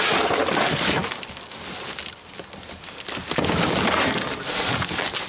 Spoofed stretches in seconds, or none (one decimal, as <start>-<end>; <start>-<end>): none